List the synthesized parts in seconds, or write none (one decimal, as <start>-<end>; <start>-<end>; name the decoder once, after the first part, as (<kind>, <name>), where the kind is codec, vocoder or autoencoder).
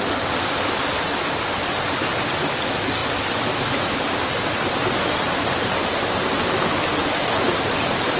none